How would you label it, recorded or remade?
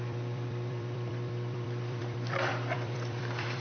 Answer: remade